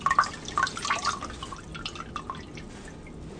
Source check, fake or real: real